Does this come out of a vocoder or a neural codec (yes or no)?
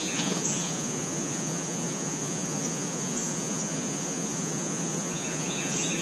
yes